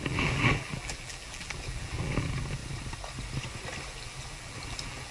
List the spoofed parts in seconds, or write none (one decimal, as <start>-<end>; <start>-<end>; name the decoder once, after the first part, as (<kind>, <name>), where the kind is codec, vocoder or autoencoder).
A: 0.0-2.6 (vocoder, BigVGAN v2); 3.9-5.1